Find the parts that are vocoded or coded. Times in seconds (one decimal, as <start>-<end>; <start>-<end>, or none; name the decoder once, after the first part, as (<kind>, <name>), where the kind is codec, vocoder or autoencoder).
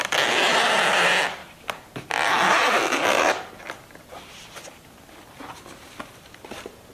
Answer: none